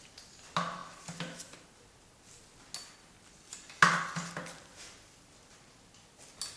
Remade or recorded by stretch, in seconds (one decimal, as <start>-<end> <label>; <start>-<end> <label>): 0.0-6.6 recorded